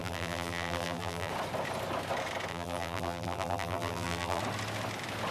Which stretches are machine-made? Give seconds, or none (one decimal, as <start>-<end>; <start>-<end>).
0.0-1.3; 2.5-4.4